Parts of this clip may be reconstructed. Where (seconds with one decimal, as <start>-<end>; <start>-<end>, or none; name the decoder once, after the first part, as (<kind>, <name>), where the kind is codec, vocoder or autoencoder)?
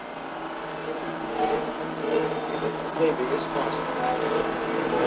0.8-3.0 (vocoder, Vocos)